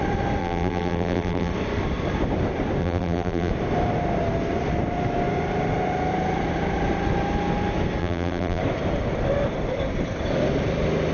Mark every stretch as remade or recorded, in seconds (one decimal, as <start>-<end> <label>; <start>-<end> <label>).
0.0-0.4 recorded; 0.4-1.5 remade; 1.5-2.8 recorded; 2.8-3.5 remade; 3.5-8.0 recorded; 8.0-8.6 remade; 8.6-11.1 recorded